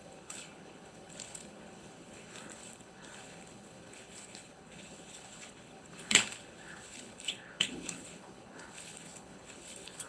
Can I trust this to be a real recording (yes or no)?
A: no